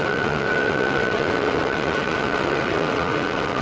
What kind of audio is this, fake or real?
fake